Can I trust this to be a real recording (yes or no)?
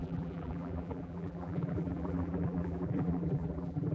no